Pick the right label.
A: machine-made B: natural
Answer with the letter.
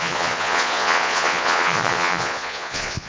A